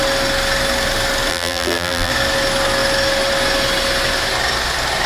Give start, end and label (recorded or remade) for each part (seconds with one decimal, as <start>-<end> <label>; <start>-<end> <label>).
0.0-1.3 recorded; 1.3-2.1 remade; 2.1-5.1 recorded

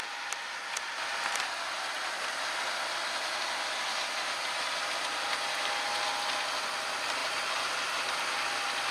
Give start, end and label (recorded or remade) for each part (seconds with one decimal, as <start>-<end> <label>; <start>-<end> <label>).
0.0-7.2 recorded; 7.2-7.9 remade; 7.9-8.9 recorded

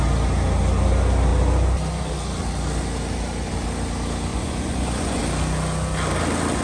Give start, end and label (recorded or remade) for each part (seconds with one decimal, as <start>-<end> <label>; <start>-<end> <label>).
0.0-4.3 recorded; 4.3-5.2 remade; 5.2-6.6 recorded

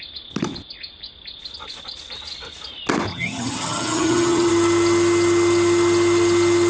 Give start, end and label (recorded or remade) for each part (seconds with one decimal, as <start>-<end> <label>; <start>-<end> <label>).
0.0-3.1 recorded; 3.1-4.5 remade; 4.5-6.7 recorded

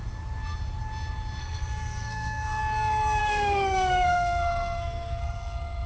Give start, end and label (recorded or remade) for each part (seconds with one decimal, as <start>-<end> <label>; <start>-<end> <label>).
0.0-1.4 recorded; 1.4-2.6 remade; 2.6-3.2 recorded; 3.2-5.9 remade

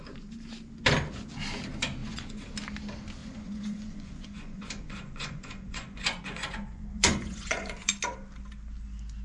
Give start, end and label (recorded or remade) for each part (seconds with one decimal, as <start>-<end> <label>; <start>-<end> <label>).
0.0-2.0 recorded; 2.0-2.5 remade; 2.5-3.2 recorded; 3.2-7.9 remade; 7.9-9.2 recorded

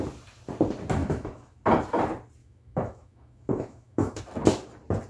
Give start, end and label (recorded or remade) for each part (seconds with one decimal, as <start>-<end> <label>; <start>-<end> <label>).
0.0-1.0 recorded; 1.0-1.6 remade; 1.6-2.4 recorded; 2.4-4.2 remade; 4.2-5.1 recorded

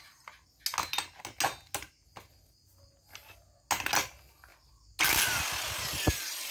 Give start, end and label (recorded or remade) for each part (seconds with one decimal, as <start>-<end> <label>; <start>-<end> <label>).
0.0-6.5 recorded